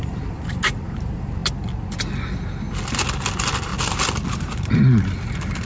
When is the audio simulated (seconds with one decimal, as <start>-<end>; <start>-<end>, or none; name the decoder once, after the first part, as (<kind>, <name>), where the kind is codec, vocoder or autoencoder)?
0.0-1.4 (vocoder, BigVGAN v2); 3.3-3.7; 4.3-4.8